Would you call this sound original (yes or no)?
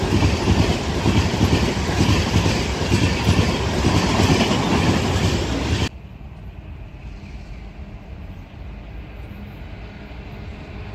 yes